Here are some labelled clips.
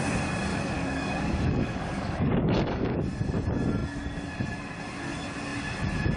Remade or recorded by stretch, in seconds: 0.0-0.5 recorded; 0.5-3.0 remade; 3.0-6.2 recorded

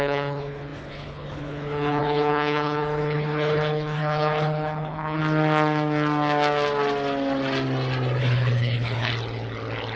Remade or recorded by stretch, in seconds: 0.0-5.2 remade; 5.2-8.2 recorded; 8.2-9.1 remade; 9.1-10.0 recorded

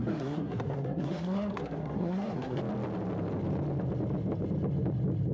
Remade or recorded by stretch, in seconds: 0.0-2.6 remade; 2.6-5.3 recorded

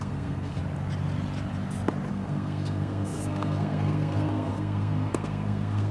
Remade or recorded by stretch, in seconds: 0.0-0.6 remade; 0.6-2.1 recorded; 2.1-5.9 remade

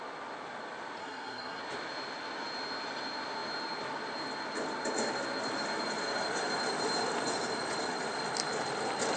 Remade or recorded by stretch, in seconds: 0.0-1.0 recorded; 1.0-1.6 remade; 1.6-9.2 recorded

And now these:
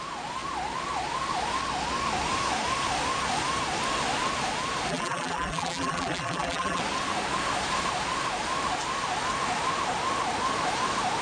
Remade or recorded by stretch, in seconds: 0.0-4.9 recorded; 4.9-6.8 remade; 6.8-11.2 recorded

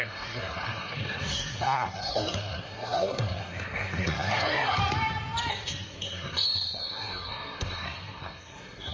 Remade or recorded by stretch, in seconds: 0.0-4.8 remade; 4.8-5.5 recorded; 5.5-8.9 remade